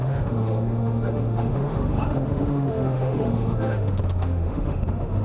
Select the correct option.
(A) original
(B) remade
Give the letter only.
B